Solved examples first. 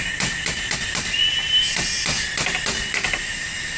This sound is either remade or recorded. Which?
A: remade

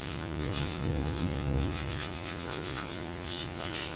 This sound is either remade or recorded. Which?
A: remade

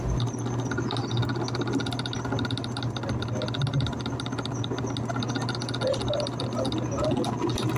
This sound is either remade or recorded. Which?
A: recorded